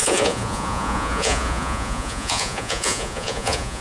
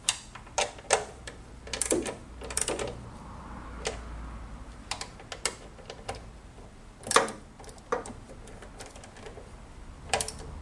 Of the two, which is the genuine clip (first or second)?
second